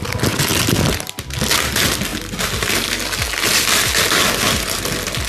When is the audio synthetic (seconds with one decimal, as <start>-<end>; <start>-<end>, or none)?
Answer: none